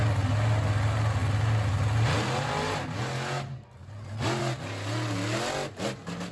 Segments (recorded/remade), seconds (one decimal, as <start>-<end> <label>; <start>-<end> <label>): 0.0-6.3 recorded